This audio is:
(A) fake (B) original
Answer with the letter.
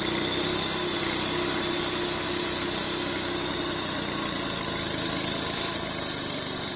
B